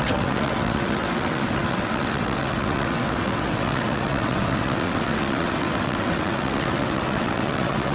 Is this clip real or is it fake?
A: fake